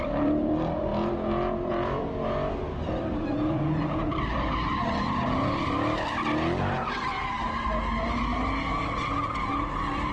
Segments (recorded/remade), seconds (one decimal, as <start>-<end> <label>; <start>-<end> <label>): 0.0-0.9 remade; 0.9-1.7 recorded; 1.7-4.7 remade; 4.7-10.1 recorded